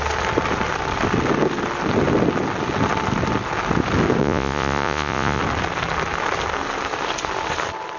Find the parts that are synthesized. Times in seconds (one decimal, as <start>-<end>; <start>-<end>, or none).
4.2-5.4